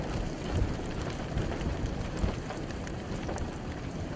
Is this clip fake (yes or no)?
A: yes